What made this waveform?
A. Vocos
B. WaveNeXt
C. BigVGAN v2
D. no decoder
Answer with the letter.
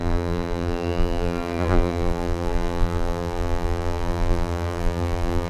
C